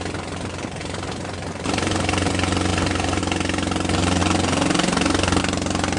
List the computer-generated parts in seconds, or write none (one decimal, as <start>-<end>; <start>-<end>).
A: 0.8-2.3; 2.7-3.2